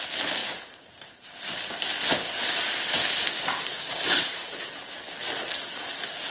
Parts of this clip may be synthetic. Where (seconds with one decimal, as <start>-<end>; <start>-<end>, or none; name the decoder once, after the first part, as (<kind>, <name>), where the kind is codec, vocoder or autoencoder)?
0.4-1.3 (vocoder, BigVGAN v2); 3.7-5.0